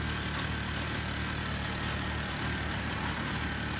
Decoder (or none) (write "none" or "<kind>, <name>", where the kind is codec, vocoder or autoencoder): none